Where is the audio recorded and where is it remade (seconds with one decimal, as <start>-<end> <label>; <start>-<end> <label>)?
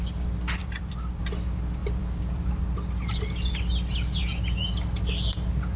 0.0-0.6 recorded; 0.6-1.2 remade; 1.2-1.8 recorded; 1.8-2.5 remade; 2.5-5.8 recorded